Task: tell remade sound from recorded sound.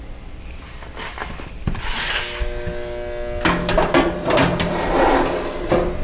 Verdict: recorded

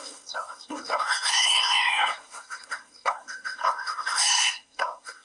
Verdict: remade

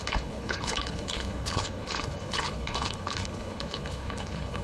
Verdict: remade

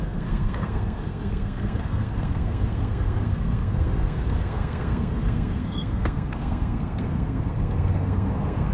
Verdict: remade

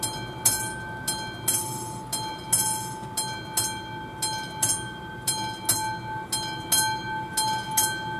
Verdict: recorded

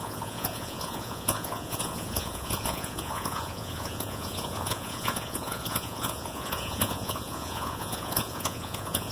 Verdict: remade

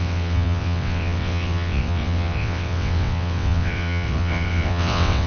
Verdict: remade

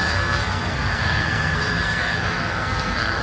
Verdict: remade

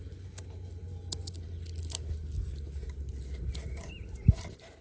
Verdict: recorded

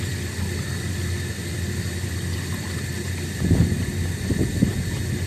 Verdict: recorded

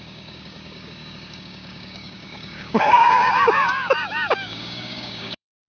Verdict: remade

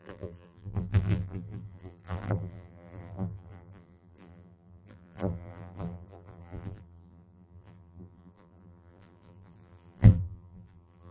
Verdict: remade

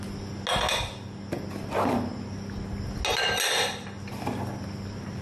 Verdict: recorded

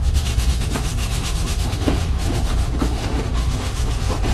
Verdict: remade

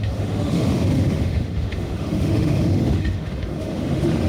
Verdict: remade